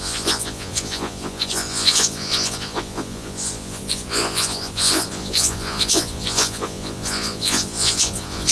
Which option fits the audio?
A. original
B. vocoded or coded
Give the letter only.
B